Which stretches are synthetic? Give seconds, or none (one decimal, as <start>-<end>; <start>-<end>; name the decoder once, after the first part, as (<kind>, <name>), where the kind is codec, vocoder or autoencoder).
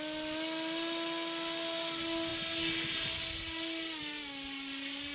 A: none